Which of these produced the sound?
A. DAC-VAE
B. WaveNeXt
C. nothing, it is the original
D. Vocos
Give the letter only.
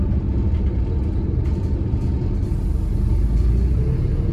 C